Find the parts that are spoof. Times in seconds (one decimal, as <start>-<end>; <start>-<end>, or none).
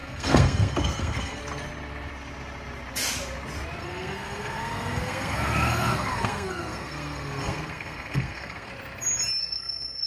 0.0-1.4; 3.8-8.7; 9.4-10.1